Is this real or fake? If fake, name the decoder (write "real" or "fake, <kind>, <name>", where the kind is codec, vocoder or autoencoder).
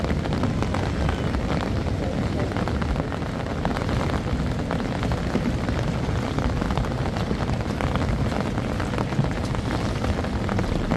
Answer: real